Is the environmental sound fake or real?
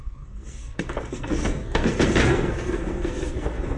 fake